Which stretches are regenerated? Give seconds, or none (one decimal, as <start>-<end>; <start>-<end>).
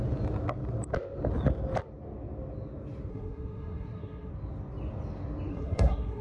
3.1-4.3; 5.5-6.2